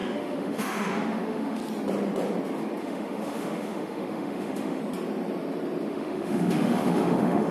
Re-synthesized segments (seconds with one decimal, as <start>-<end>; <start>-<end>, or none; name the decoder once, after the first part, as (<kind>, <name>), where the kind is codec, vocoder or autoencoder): 0.0-1.6 (autoencoder, DAC-VAE); 2.8-4.8; 5.9-7.5